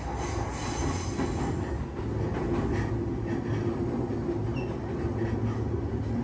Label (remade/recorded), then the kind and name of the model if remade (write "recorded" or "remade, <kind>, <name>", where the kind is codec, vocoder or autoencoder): recorded